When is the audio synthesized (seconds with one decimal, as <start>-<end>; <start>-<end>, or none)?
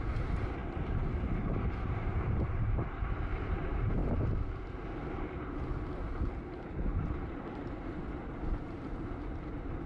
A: 0.0-4.0; 7.3-9.9